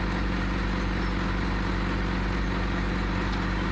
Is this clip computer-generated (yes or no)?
no